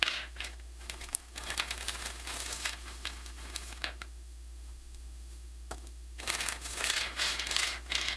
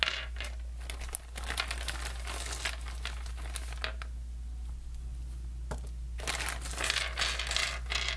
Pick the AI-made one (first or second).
first